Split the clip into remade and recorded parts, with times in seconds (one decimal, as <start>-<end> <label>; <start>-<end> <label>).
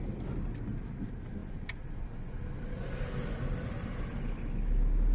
0.0-5.1 recorded